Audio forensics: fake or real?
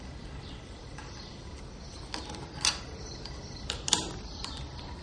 real